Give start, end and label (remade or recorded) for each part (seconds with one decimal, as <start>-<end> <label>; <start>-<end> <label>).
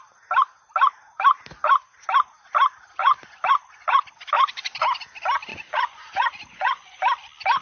0.0-3.0 recorded; 3.0-4.0 remade; 4.0-5.5 recorded; 5.5-7.0 remade; 7.0-7.6 recorded